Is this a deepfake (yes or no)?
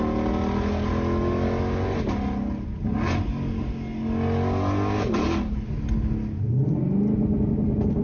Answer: no